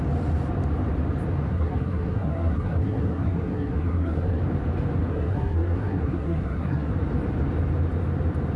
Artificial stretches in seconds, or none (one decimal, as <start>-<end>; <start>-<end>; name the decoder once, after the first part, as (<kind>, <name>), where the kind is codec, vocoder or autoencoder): 1.5-4.4 (codec, SNAC); 5.1-6.9